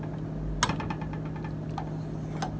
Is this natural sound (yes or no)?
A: yes